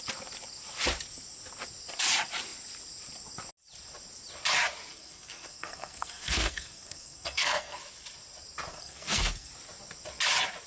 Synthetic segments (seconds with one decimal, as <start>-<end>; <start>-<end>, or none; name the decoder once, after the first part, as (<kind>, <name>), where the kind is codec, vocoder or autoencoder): 4.9-7.8 (codec, SNAC); 8.7-9.5

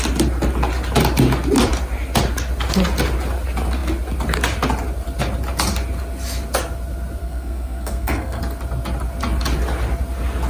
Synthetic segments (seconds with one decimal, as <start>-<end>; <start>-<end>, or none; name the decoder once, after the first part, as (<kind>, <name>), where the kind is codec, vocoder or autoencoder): 7.2-8.4 (codec, SNAC)

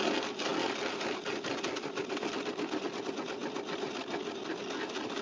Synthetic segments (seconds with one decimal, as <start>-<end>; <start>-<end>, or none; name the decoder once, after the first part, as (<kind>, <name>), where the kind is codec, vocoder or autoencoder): none